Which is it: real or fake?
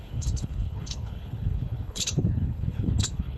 fake